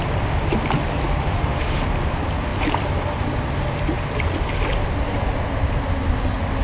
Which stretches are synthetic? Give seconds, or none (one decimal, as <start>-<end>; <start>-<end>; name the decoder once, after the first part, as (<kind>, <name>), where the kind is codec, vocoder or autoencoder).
1.2-1.8 (autoencoder, DAC-VAE)